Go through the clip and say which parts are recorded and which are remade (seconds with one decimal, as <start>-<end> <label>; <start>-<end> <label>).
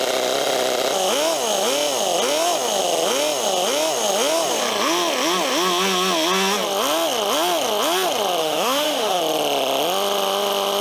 0.0-8.4 recorded; 8.4-9.2 remade; 9.2-10.8 recorded